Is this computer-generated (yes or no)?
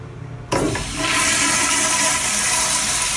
no